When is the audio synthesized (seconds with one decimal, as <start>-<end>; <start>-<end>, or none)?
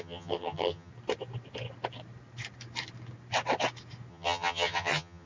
0.0-0.9; 4.1-5.3